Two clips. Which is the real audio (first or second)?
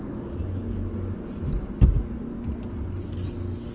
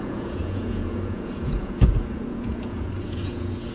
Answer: first